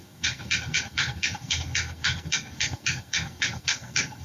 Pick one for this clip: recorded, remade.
remade